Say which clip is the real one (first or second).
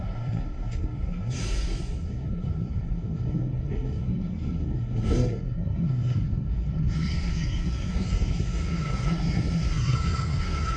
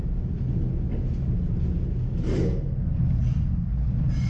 second